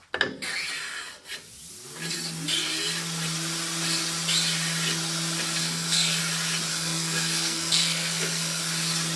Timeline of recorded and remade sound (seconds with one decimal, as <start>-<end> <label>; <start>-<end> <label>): 0.0-5.6 recorded; 5.6-6.2 remade; 6.2-6.7 recorded; 6.7-8.6 remade; 8.6-9.2 recorded